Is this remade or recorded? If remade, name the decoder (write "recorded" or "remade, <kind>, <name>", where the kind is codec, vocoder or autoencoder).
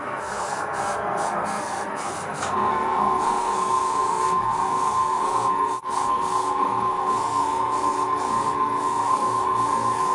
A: remade, codec, SNAC